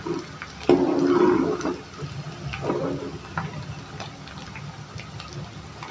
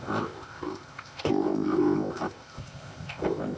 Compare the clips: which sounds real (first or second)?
first